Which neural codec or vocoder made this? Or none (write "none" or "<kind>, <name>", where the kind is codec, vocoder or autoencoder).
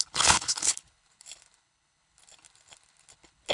codec, HILCodec